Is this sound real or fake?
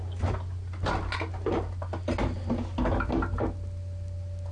real